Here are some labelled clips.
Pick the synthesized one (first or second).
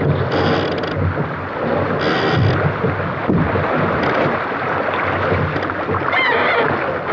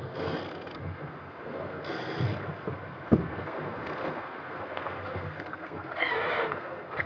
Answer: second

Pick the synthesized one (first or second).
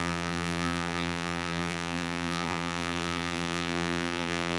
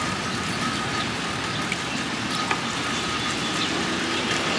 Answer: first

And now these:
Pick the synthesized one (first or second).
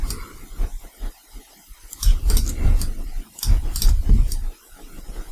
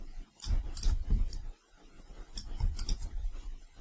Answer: first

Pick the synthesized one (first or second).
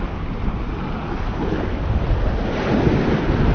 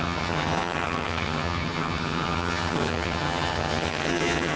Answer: second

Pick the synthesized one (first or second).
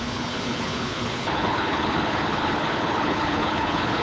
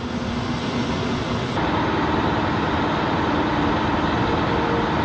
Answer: first